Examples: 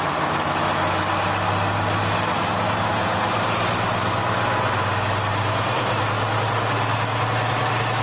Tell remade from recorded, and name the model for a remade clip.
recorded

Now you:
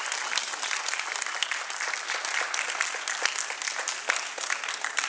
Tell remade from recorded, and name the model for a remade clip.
recorded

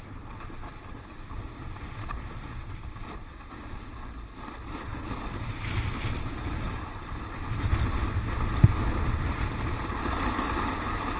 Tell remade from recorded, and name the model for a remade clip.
recorded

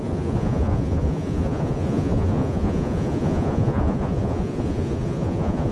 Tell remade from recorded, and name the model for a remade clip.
remade, vocoder, Vocos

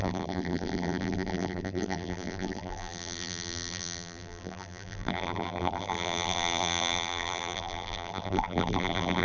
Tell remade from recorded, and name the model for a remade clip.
remade, vocoder, BigVGAN v2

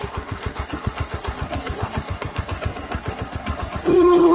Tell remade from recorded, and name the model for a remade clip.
remade, codec, SNAC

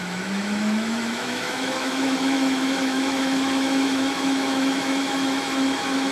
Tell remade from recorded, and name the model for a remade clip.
remade, autoencoder, DAC-VAE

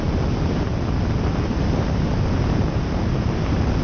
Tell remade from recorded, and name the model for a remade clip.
recorded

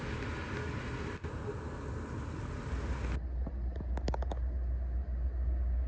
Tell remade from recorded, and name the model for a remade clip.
recorded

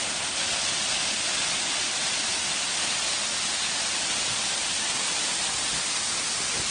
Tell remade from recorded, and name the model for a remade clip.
recorded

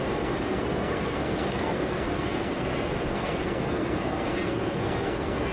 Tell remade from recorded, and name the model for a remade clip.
remade, codec, SNAC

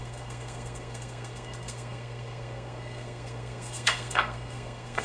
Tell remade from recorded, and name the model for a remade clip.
remade, codec, SNAC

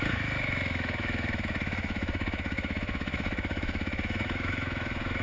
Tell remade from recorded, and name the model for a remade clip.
remade, autoencoder, DAC-VAE